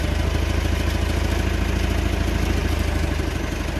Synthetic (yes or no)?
no